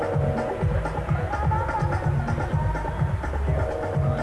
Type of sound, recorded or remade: recorded